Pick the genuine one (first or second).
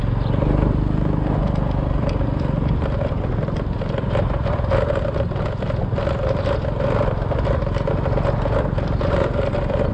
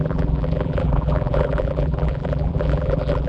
first